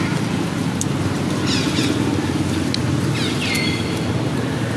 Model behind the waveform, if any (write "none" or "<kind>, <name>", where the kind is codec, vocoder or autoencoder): none